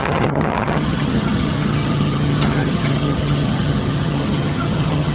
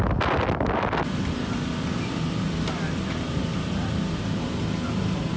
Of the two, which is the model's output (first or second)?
first